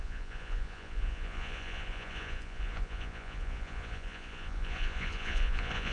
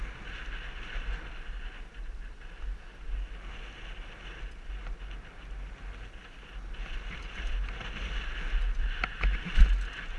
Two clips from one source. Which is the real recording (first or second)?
second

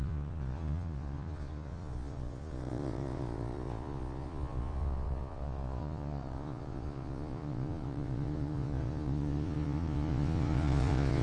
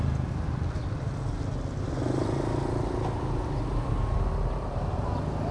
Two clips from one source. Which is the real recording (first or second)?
second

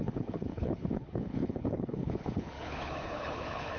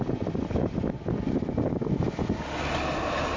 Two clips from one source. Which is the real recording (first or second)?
second